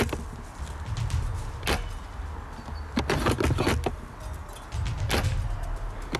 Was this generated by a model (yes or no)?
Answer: no